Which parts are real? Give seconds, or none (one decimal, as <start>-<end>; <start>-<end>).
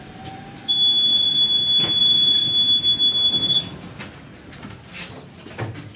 0.0-1.1; 1.6-2.0; 2.5-6.0